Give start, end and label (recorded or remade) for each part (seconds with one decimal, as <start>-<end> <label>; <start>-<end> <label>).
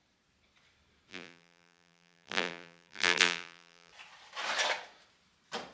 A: 0.0-1.1 recorded; 1.1-3.9 remade; 3.9-5.7 recorded